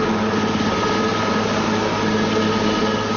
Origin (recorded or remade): recorded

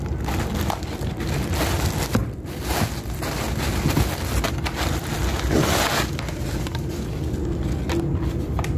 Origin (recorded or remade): recorded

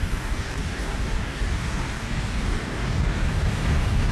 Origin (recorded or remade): remade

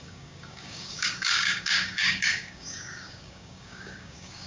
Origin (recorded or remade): remade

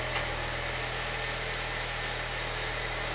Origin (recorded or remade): recorded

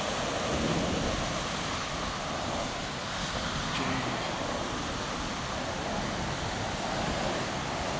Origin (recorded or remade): recorded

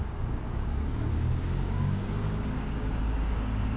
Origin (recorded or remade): remade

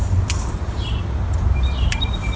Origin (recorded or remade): recorded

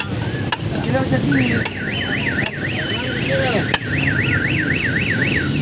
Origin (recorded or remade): recorded